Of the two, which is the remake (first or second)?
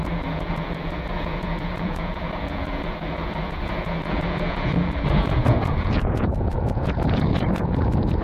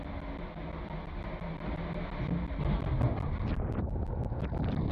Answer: first